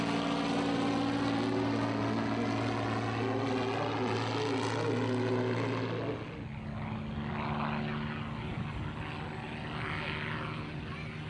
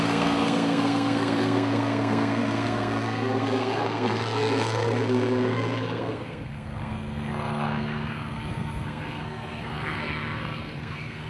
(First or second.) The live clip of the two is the first